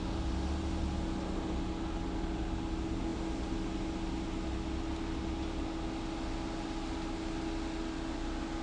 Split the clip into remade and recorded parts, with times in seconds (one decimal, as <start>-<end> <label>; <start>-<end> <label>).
0.0-8.6 recorded